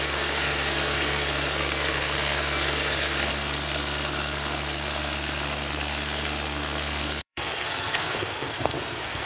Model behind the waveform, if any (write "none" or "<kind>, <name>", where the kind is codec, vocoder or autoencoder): codec, SNAC